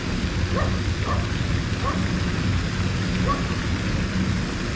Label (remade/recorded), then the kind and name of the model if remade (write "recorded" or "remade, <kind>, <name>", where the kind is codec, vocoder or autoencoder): recorded